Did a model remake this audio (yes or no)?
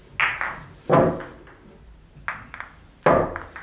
no